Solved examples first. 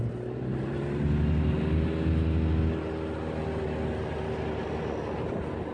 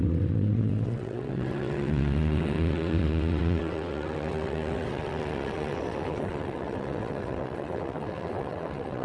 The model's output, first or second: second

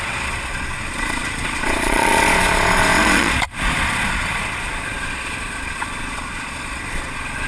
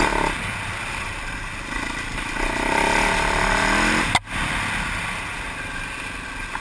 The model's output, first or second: first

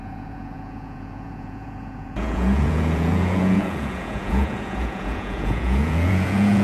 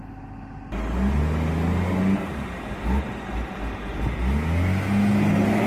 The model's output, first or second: first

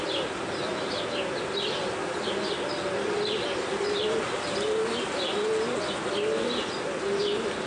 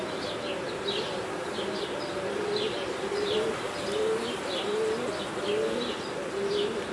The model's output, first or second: second